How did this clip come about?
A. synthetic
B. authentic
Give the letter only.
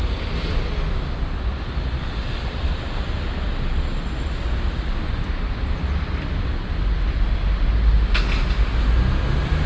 B